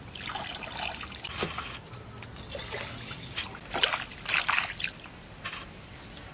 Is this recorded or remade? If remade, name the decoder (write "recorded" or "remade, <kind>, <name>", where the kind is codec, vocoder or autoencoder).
recorded